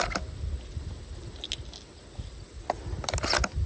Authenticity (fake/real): real